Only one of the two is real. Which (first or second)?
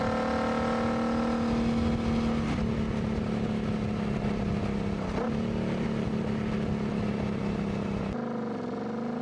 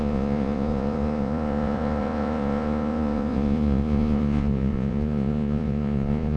first